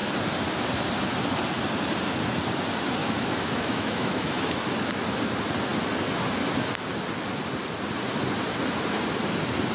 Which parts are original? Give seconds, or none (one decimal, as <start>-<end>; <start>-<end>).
0.0-3.0; 4.3-9.7